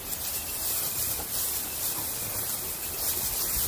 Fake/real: fake